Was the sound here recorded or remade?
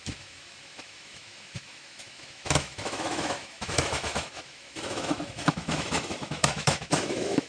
remade